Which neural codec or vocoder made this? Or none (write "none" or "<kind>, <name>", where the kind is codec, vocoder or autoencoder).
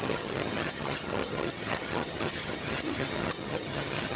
vocoder, HiFi-GAN